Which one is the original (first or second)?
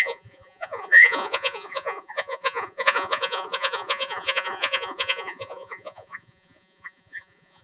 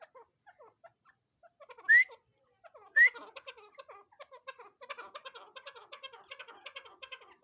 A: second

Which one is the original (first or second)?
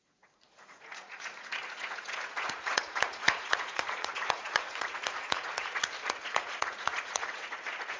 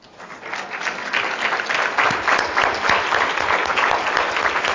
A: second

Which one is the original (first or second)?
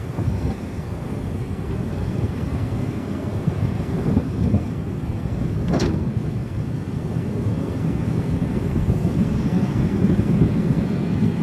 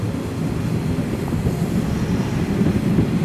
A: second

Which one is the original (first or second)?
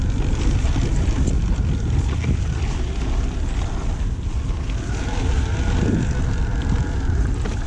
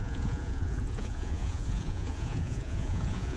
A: first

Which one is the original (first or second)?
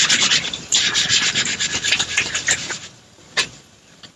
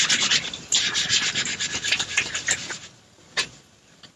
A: second